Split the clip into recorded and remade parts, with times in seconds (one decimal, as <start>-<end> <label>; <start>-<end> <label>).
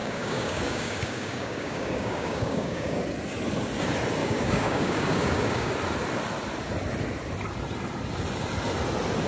0.0-3.0 remade; 3.0-4.2 recorded; 4.2-5.7 remade; 5.7-9.3 recorded